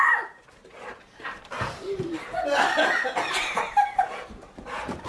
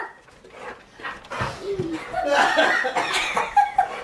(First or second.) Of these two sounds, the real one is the second